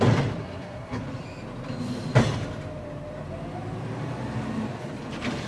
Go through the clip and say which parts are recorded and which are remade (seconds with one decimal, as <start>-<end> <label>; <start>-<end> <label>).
0.0-0.4 recorded; 0.4-1.0 remade; 1.0-5.5 recorded

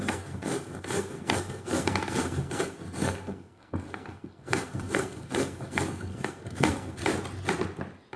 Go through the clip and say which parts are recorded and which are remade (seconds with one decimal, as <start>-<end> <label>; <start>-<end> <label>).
0.0-7.0 remade; 7.0-8.2 recorded

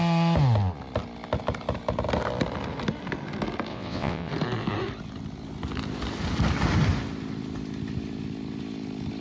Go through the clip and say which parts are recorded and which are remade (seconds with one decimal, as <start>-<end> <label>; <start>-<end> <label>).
0.0-3.7 recorded; 3.7-4.3 remade; 4.3-9.2 recorded

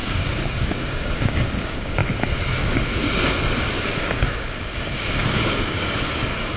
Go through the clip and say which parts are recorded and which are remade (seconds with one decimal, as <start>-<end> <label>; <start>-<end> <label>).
0.0-2.0 remade; 2.0-3.8 recorded; 3.8-6.6 remade

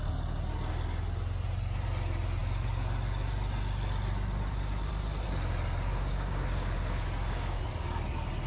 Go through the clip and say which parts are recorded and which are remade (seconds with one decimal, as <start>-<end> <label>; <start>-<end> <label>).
0.0-5.9 recorded; 5.9-7.6 remade; 7.6-8.5 recorded

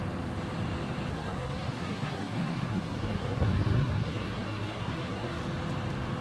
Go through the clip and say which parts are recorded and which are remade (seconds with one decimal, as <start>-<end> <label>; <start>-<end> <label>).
0.0-1.1 recorded; 1.1-5.4 remade; 5.4-6.2 recorded

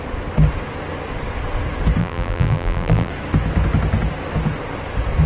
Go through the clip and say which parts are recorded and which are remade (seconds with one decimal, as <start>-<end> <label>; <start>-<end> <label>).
0.0-2.0 recorded; 2.0-3.1 remade; 3.1-5.3 recorded

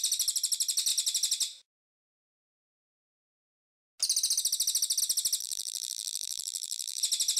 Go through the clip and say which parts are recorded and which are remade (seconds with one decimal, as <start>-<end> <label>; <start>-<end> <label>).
0.0-5.4 recorded; 5.4-7.0 remade; 7.0-7.4 recorded